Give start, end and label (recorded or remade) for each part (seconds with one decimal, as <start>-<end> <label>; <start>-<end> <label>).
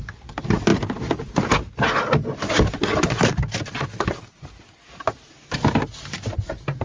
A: 0.0-6.8 recorded